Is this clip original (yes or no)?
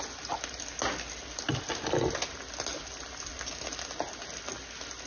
yes